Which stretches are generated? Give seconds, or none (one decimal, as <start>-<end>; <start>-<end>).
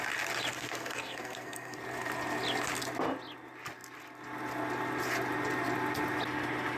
0.5-1.8